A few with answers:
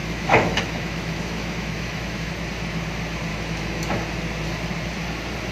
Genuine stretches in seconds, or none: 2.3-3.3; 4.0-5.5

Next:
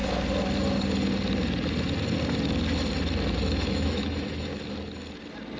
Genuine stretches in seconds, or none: 0.0-3.4; 4.5-5.6

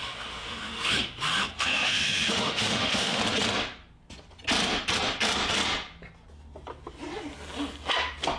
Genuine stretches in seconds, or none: 3.2-8.4